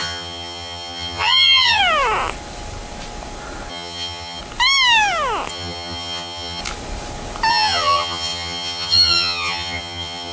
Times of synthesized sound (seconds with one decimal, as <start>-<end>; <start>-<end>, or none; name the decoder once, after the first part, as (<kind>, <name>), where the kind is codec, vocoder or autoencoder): 0.0-1.8 (vocoder, HiFi-GAN); 3.7-4.4; 5.5-6.6; 7.5-10.3